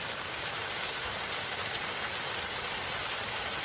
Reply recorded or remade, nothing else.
recorded